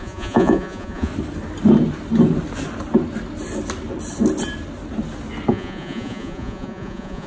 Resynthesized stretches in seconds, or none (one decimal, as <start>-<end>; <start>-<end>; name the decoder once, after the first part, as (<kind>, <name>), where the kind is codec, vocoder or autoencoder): 0.0-1.1 (vocoder, Vocos); 5.5-7.3